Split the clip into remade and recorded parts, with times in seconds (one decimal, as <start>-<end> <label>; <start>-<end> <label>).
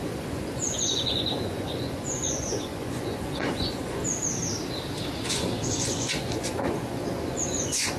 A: 0.0-4.0 remade; 4.0-5.3 recorded; 5.3-8.0 remade